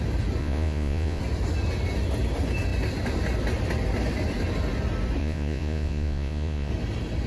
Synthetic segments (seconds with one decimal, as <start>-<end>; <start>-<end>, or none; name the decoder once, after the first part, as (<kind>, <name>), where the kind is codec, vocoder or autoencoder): 0.4-1.2 (vocoder, Vocos); 5.2-6.7